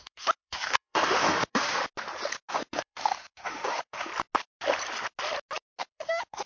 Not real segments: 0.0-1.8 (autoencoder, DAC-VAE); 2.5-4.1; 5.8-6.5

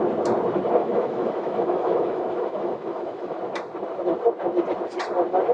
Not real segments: 0.8-3.4 (autoencoder, DAC-VAE)

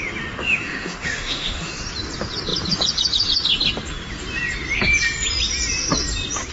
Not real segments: 0.4-1.7 (autoencoder, DAC-VAE)

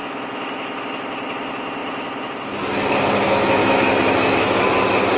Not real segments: 0.0-0.8 (autoencoder, DAC-VAE); 3.6-4.6

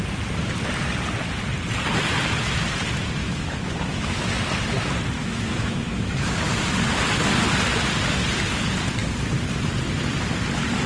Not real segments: 3.2-4.3 (autoencoder, DAC-VAE); 5.2-6.5